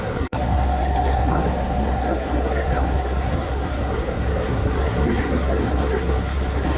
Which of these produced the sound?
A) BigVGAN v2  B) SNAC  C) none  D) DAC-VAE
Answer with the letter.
B